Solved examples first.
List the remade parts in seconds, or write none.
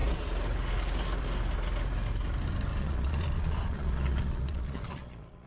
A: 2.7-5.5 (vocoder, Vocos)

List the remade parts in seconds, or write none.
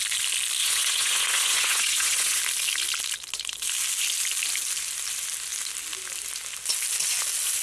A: 0.6-2.4 (vocoder, Vocos)